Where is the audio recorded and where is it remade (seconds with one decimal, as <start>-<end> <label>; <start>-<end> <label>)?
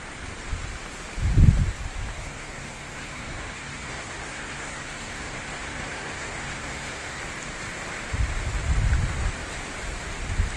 0.0-2.1 recorded; 2.1-7.2 remade; 7.2-10.6 recorded